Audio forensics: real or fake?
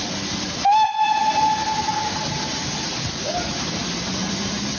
real